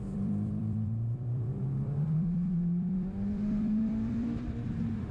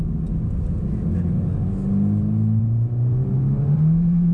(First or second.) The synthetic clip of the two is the first